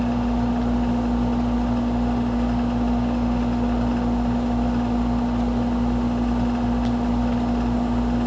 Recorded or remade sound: recorded